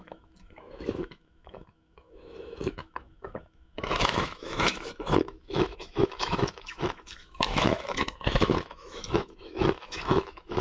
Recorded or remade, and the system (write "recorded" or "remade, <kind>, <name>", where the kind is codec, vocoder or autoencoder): remade, autoencoder, DAC-VAE